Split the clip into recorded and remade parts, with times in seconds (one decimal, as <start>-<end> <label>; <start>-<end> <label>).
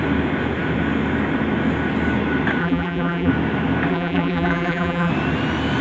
0.0-2.6 recorded; 2.6-3.3 remade; 3.3-3.9 recorded; 3.9-5.1 remade; 5.1-5.8 recorded